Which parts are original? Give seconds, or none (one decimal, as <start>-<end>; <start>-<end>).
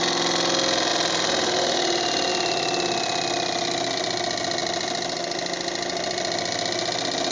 0.0-0.9; 2.3-7.3